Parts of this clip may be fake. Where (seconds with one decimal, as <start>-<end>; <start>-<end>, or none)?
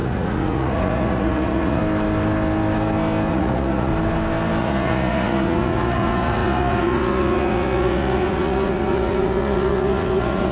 0.0-1.8; 3.3-3.9; 4.6-10.5